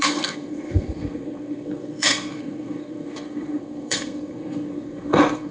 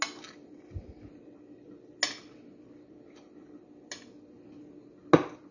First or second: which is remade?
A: first